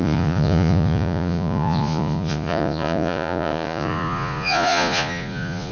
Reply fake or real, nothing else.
fake